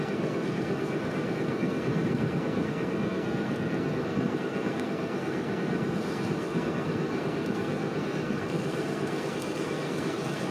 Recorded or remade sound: remade